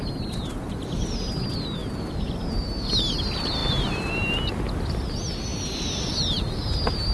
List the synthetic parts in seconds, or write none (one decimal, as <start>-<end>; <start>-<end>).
3.6-4.1